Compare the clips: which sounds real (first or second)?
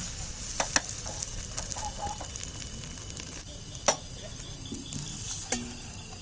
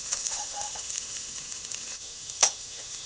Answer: first